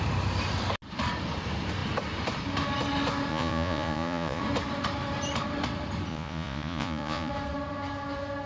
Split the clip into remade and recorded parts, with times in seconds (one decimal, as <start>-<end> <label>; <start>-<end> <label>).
0.0-3.3 recorded; 3.3-4.4 remade; 4.4-6.1 recorded; 6.1-7.3 remade; 7.3-8.5 recorded